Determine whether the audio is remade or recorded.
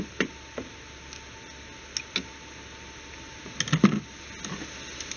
recorded